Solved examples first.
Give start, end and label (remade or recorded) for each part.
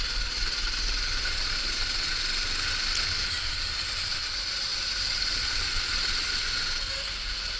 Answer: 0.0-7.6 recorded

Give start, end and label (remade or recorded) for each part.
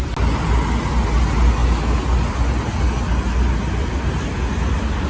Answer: 0.0-5.1 recorded